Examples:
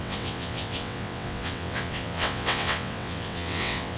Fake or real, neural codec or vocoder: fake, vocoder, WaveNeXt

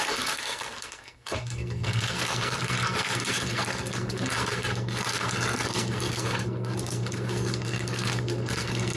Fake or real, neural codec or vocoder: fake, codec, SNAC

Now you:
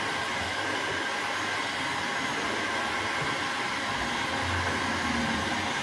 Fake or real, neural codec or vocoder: real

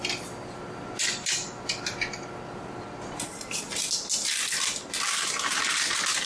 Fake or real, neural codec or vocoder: real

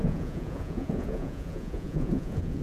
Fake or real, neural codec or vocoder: fake, vocoder, Vocos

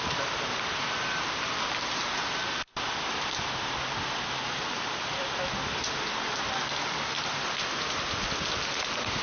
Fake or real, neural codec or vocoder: real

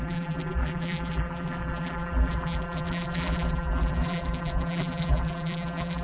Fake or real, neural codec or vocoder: fake, vocoder, BigVGAN v2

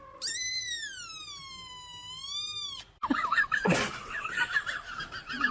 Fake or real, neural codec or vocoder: real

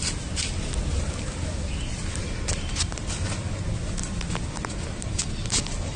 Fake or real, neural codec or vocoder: real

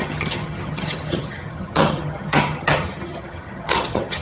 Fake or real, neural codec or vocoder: fake, vocoder, HiFi-GAN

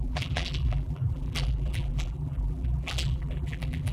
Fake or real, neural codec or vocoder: fake, vocoder, BigVGAN v2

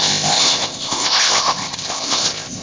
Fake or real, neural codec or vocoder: fake, codec, ZipCodec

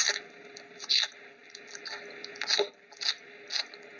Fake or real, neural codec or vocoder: real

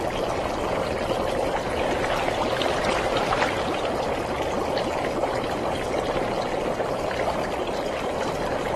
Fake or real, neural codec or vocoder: real